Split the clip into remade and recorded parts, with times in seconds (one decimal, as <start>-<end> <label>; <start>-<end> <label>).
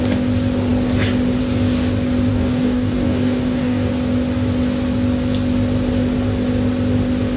0.0-2.3 recorded; 2.3-3.9 remade; 3.9-7.4 recorded